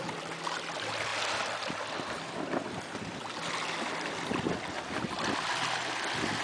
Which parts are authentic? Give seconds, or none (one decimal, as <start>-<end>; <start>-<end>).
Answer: 0.0-6.4